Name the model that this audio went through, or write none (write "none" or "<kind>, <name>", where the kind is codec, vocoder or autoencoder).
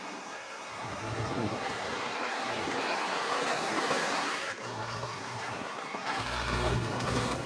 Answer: codec, SNAC